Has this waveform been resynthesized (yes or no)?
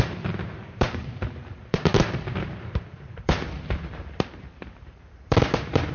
yes